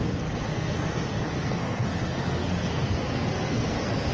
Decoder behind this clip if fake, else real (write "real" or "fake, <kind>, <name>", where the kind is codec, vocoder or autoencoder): fake, codec, SNAC